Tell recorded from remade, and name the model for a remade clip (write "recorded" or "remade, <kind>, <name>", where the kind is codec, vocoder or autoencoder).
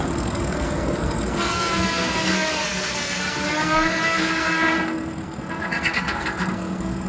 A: remade, codec, SNAC